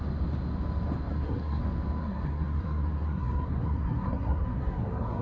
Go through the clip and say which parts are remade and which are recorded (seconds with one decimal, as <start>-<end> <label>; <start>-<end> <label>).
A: 0.0-1.1 recorded; 1.1-1.6 remade; 1.6-2.0 recorded; 2.0-5.2 remade

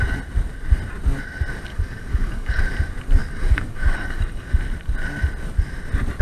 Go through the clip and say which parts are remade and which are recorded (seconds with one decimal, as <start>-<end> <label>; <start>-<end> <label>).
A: 0.0-1.7 recorded; 1.7-2.6 remade; 2.6-3.2 recorded; 3.2-4.5 remade; 4.5-6.2 recorded

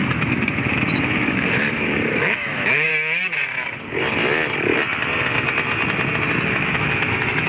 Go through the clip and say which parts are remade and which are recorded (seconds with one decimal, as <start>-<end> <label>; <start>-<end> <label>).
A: 0.0-2.9 remade; 2.9-6.5 recorded; 6.5-7.5 remade

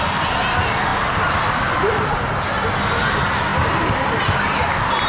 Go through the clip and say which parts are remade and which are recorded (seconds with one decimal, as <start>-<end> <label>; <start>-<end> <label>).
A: 0.0-3.5 recorded; 3.5-4.1 remade; 4.1-5.1 recorded

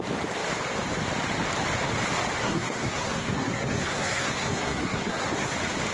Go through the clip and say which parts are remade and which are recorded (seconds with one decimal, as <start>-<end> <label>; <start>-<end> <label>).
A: 0.0-2.4 recorded; 2.4-5.5 remade; 5.5-5.9 recorded